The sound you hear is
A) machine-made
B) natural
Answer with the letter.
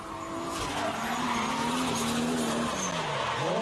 B